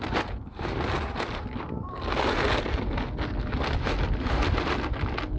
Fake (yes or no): no